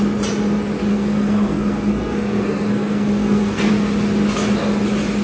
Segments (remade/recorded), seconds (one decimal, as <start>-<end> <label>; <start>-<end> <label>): 0.0-0.9 recorded; 0.9-3.7 remade; 3.7-5.2 recorded